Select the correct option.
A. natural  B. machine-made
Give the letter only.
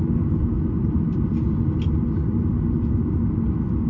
A